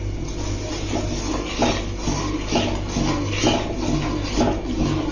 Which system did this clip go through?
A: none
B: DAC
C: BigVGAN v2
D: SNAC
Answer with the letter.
A